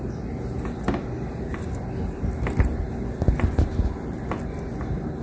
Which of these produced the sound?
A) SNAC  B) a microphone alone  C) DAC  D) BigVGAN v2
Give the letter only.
B